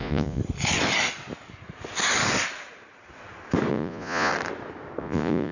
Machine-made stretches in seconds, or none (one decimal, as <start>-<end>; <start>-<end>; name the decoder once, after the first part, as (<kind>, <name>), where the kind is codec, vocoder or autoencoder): 0.0-0.4 (vocoder, Vocos); 3.7-4.3; 5.0-5.5